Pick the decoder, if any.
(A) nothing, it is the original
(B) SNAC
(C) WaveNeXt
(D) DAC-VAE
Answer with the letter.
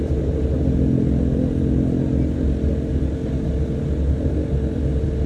A